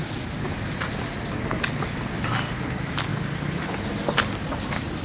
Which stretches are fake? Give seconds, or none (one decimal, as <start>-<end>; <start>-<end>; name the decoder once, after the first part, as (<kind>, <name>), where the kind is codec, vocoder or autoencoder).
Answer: none

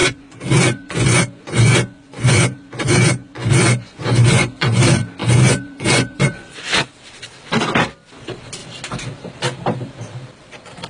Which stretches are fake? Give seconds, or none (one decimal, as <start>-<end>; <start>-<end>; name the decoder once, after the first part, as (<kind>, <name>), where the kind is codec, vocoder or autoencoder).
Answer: 0.0-4.8 (vocoder, Vocos); 5.2-6.9